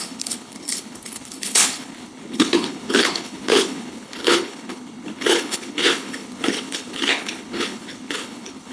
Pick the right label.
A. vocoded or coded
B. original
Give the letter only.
A